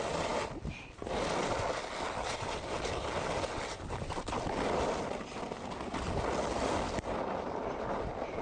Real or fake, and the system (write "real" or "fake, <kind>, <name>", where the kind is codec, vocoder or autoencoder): real